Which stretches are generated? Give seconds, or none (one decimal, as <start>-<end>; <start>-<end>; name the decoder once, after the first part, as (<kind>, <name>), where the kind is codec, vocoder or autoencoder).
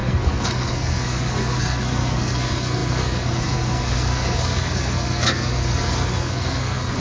0.0-7.0 (codec, SNAC)